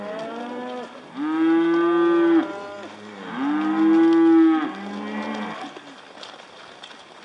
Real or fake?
real